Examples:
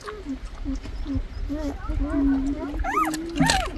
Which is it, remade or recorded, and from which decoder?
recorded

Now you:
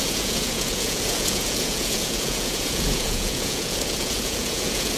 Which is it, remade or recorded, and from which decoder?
remade, vocoder, Vocos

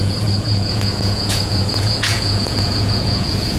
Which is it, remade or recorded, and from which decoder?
remade, vocoder, Vocos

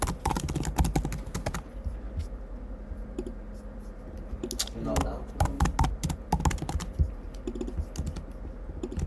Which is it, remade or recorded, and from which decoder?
recorded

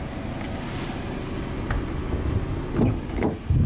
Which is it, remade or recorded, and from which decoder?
recorded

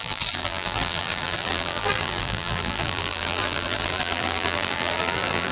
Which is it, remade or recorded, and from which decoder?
remade, vocoder, BigVGAN v2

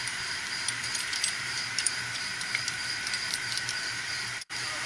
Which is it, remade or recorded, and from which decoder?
remade, vocoder, BigVGAN v2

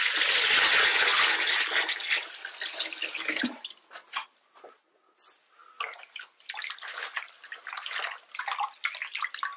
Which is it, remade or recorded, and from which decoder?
recorded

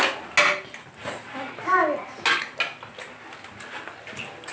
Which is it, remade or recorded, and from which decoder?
recorded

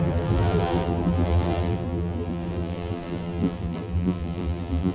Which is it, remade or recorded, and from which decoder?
remade, vocoder, BigVGAN v2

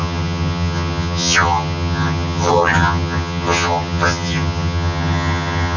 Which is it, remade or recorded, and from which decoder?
remade, vocoder, HiFi-GAN